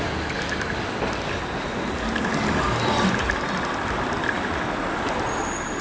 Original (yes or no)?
yes